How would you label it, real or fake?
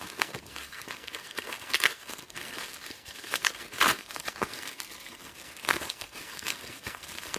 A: fake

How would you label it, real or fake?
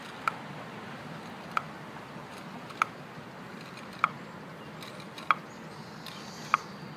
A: real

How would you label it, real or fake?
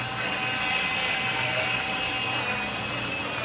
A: real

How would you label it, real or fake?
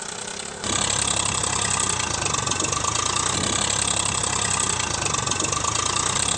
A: real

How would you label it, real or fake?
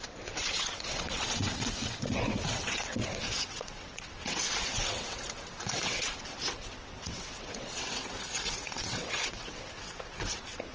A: fake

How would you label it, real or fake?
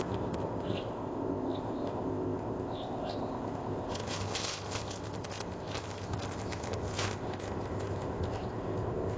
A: fake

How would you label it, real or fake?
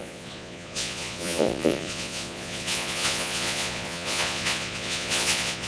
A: fake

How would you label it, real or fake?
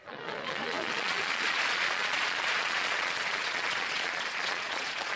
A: fake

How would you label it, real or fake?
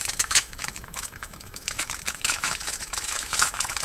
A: fake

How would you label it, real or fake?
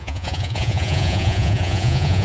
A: fake